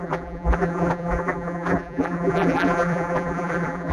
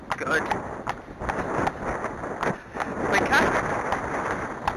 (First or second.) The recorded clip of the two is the second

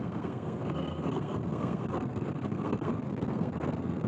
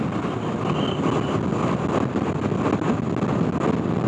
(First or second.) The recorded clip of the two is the second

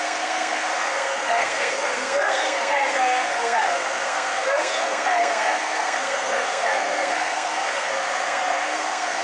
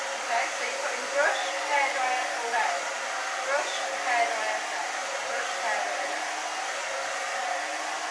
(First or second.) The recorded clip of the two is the second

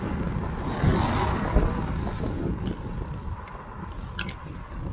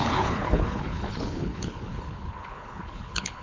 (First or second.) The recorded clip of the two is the first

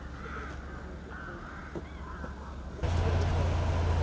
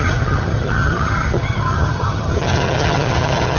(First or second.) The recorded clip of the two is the first